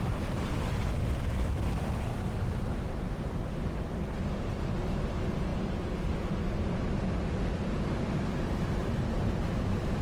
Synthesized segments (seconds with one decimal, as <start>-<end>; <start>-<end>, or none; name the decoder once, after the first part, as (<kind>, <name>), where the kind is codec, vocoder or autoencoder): 2.1-3.5 (vocoder, BigVGAN v2)